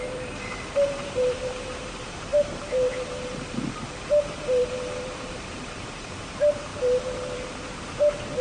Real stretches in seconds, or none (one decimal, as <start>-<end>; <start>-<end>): none